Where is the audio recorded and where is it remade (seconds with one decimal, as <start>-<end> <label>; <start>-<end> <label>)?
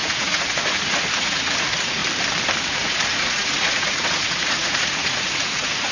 0.0-2.0 remade; 2.0-2.6 recorded; 2.6-5.9 remade